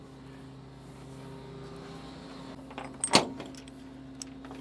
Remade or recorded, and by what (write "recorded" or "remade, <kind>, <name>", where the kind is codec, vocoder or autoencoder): recorded